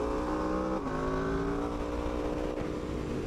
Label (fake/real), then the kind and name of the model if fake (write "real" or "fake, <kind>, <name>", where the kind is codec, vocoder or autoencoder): real